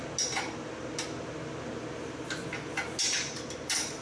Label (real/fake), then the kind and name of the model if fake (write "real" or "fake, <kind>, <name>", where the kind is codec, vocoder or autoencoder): real